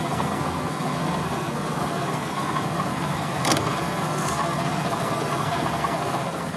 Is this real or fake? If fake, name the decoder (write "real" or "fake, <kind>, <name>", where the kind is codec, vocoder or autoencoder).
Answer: fake, codec, SNAC